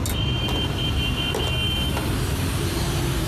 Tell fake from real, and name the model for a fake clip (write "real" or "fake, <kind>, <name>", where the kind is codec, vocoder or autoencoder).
real